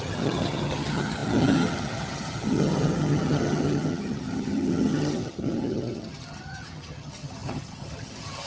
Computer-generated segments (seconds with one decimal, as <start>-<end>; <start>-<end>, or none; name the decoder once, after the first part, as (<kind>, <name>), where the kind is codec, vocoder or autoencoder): 0.0-8.5 (vocoder, HiFi-GAN)